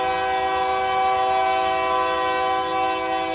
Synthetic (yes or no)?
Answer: no